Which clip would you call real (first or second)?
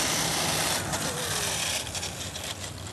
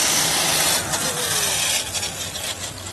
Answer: second